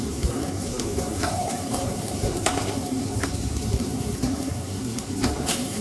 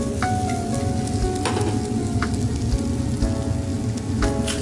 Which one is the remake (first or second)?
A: first